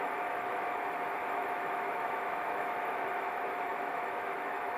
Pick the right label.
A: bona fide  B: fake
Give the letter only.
B